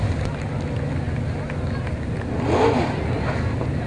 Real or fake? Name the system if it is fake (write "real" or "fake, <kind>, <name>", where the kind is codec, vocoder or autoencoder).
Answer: real